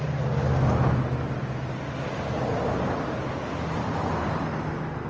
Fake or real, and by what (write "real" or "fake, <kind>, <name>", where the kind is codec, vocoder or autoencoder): real